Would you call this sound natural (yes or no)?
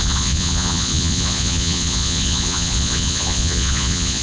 no